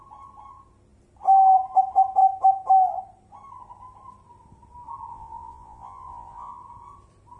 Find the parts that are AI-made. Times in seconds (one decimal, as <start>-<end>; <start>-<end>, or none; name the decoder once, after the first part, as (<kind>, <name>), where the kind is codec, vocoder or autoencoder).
5.1-6.5 (vocoder, Vocos)